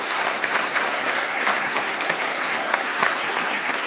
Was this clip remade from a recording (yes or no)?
yes